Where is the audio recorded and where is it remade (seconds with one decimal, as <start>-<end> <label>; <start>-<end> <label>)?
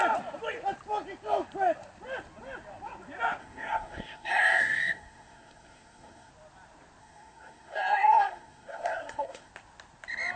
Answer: 0.0-3.4 recorded; 3.4-6.3 remade; 6.3-7.0 recorded; 7.0-9.5 remade; 9.5-10.4 recorded